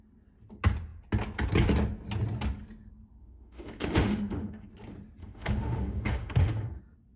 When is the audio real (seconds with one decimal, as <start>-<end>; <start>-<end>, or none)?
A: 0.0-3.2; 4.7-5.2; 6.8-7.2